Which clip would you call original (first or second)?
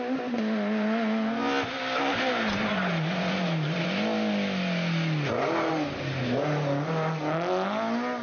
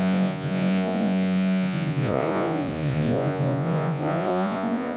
first